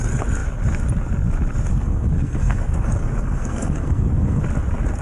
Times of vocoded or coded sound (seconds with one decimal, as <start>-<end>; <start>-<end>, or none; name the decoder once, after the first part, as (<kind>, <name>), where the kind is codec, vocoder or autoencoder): 1.7-4.4 (codec, SNAC)

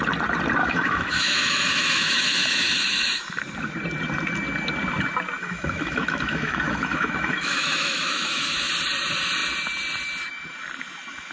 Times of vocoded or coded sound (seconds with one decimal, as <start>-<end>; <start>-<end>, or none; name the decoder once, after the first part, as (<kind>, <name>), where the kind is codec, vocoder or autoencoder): 0.6-3.4 (autoencoder, DAC-VAE); 5.4-8.7

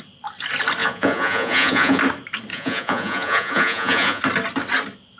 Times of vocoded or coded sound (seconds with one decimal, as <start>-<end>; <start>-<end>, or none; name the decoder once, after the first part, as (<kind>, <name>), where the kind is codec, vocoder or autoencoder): 0.8-2.0 (vocoder, Vocos); 2.5-4.2

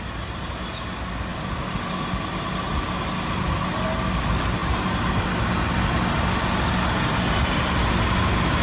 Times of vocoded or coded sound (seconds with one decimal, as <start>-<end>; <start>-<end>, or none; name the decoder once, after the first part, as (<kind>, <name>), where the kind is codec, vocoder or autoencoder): none

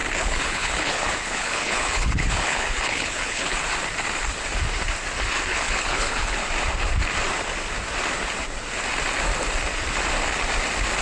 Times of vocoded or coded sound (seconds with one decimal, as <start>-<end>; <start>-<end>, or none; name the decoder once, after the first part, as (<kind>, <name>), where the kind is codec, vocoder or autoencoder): 0.0-3.6 (codec, HILCodec); 5.5-6.4

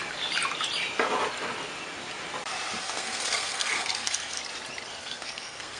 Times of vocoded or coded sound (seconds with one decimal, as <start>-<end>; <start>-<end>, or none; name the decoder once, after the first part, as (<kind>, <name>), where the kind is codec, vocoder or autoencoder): 2.8-4.4 (codec, SNAC); 4.9-5.8

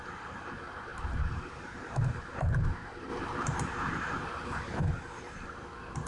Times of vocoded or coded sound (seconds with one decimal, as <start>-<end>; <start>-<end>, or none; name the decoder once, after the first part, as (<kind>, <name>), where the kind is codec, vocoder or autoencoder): 0.0-6.1 (vocoder, BigVGAN v2)